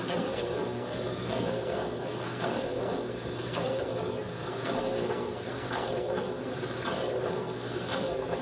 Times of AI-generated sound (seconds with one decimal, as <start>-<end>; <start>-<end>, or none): 0.0-6.5; 7.3-8.4